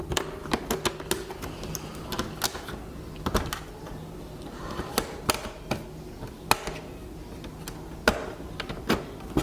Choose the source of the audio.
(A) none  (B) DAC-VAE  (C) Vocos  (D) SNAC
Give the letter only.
A